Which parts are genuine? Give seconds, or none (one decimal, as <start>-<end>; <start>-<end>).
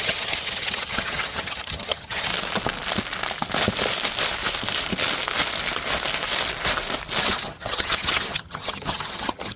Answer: 2.3-7.2